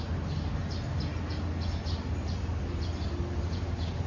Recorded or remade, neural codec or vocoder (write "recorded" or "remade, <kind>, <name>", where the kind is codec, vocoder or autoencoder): recorded